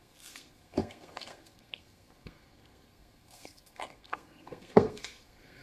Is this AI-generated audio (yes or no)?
yes